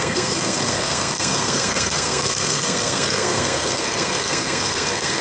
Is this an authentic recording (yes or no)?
no